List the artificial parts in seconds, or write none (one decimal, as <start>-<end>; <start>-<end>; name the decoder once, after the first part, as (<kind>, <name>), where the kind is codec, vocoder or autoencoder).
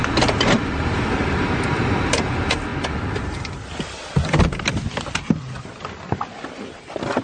none